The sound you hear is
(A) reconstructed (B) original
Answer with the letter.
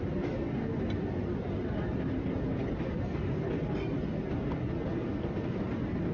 B